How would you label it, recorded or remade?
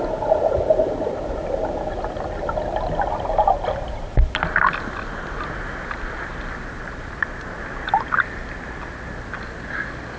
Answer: recorded